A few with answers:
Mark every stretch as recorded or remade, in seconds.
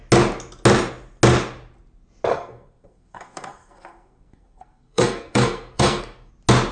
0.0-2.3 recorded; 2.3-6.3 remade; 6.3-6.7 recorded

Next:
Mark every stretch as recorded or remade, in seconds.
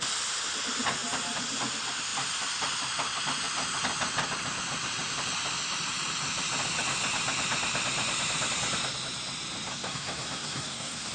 0.0-9.7 recorded; 9.7-11.1 remade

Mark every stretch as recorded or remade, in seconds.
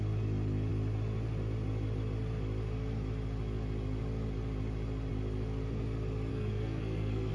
0.0-6.3 recorded; 6.3-7.3 remade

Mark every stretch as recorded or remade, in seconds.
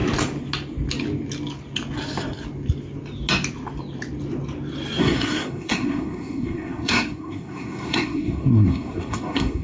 0.0-5.0 recorded; 5.0-9.6 remade